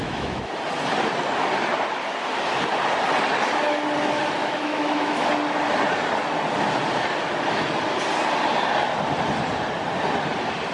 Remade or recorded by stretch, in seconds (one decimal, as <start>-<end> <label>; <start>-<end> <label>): 0.0-0.5 remade; 0.5-4.4 recorded; 4.4-5.3 remade; 5.3-10.7 recorded